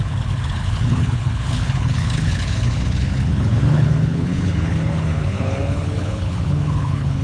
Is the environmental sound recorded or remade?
remade